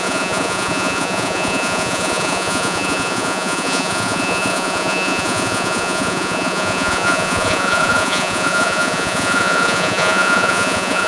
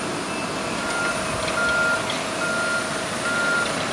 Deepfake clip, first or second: first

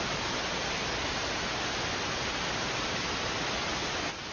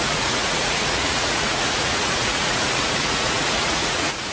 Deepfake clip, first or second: second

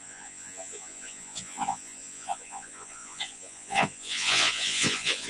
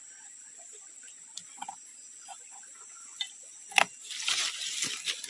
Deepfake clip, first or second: first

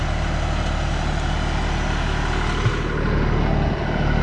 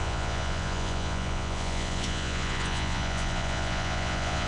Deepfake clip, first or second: second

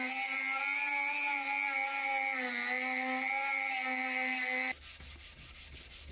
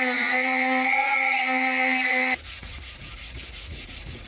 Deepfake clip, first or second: second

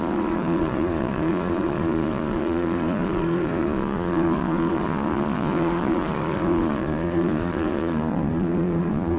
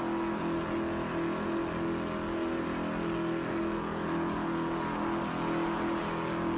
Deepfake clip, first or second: first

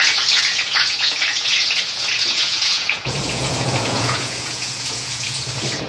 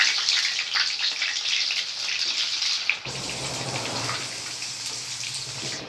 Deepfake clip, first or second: first